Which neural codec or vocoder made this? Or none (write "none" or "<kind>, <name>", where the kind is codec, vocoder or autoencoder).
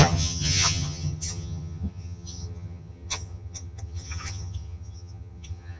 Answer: vocoder, HiFi-GAN